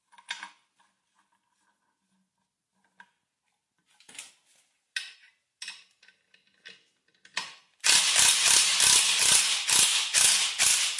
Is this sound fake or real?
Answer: real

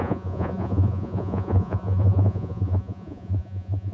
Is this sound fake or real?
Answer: fake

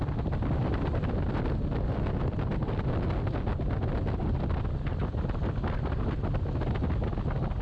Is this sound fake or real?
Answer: real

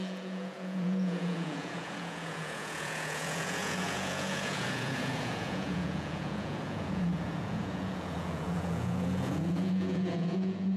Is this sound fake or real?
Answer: fake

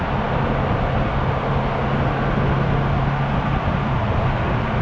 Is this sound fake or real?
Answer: real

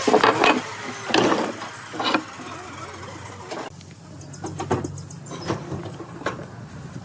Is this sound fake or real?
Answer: real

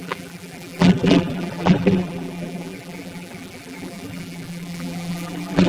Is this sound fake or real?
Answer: fake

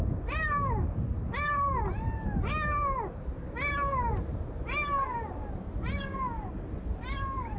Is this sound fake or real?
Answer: real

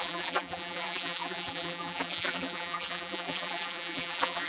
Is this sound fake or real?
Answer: fake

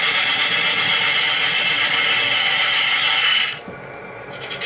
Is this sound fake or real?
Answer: real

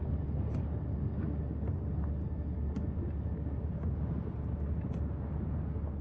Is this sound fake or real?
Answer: real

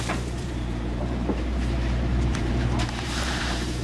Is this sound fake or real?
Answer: fake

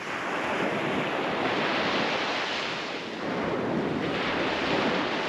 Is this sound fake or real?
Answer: real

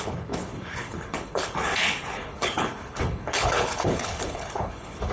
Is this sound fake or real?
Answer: fake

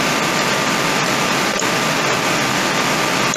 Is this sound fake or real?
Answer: real